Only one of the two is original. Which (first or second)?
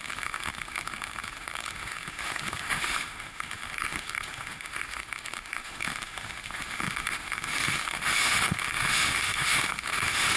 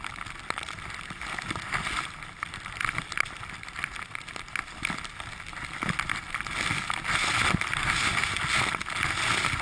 second